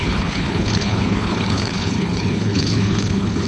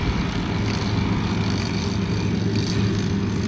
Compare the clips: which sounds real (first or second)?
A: second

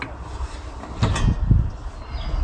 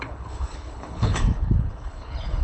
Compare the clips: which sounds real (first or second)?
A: first